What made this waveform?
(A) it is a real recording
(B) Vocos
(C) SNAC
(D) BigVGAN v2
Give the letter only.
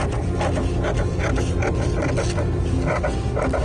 A